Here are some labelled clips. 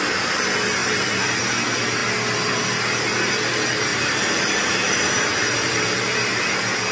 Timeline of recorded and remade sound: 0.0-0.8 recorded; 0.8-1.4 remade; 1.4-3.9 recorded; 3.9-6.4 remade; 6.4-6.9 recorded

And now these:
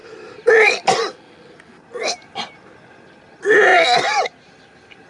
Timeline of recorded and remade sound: 0.0-3.1 remade; 3.1-3.7 recorded; 3.7-4.6 remade; 4.6-5.1 recorded

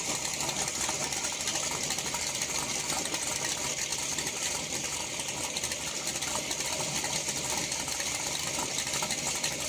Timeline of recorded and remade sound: 0.0-3.9 recorded; 3.9-7.1 remade; 7.1-9.7 recorded

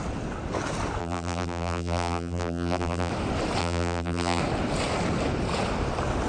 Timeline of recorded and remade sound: 0.0-1.0 recorded; 1.0-3.1 remade; 3.1-3.6 recorded; 3.6-4.4 remade; 4.4-6.3 recorded

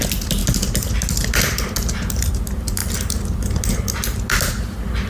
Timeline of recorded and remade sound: 0.0-5.1 recorded

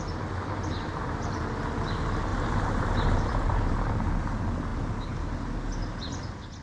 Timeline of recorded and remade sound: 0.0-2.3 recorded; 2.3-3.9 remade; 3.9-6.6 recorded